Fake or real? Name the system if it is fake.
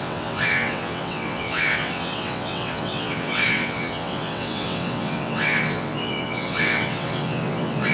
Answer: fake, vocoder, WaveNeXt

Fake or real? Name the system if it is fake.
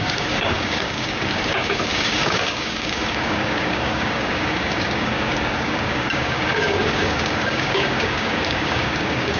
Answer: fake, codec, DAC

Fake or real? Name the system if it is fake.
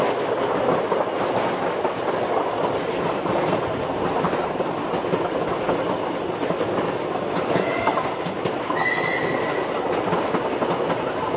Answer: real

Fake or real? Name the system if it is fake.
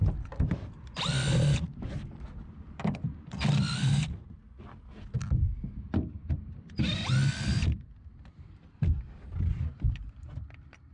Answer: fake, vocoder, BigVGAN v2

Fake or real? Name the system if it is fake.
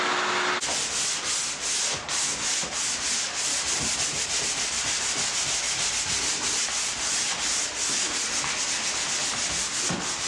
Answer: real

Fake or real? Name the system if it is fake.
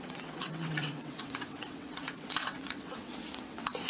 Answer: fake, vocoder, WaveNeXt